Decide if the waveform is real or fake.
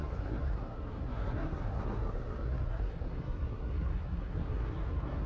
fake